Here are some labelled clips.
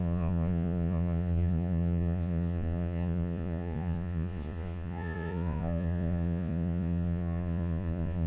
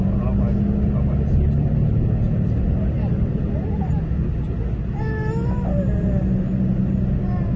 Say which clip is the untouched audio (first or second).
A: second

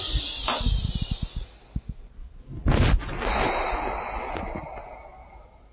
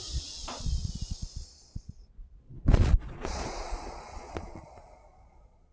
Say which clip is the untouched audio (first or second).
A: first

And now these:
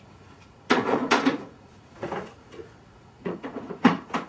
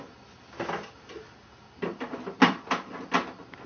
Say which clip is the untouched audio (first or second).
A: second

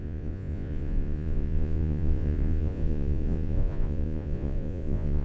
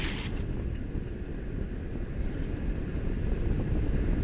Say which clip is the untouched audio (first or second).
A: second